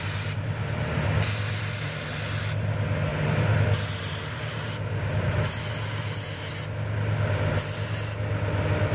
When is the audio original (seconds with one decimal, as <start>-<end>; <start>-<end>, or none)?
0.0-8.9